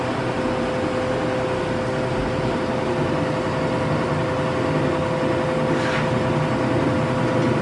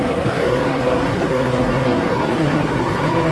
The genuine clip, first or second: first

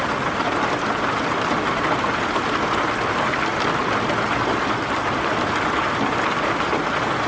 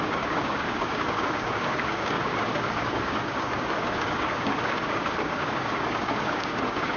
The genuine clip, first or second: first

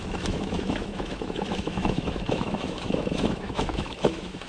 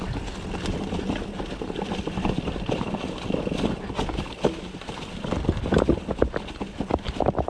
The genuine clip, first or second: second